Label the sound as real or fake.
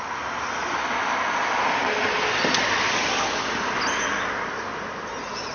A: real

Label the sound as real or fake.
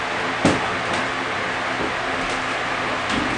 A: real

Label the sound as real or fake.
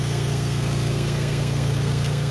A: fake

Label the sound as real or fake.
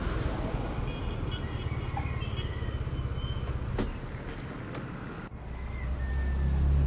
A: real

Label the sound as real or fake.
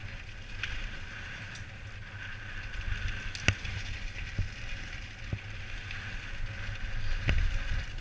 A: real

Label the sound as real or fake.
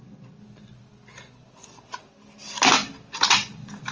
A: real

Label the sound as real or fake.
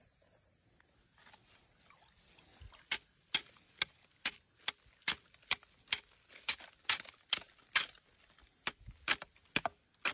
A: real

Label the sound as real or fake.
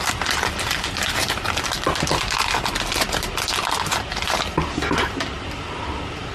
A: real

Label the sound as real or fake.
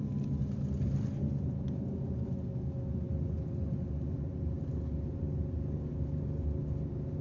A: real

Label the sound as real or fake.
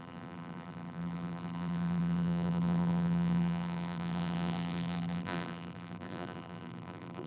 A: fake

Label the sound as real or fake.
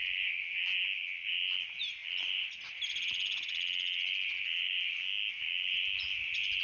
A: real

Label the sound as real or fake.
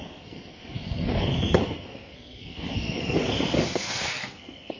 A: fake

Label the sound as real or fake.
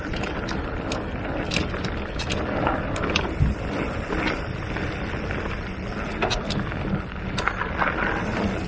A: real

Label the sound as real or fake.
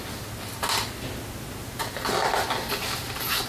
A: real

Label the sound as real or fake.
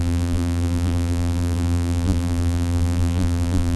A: fake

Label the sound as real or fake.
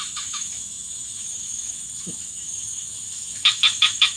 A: fake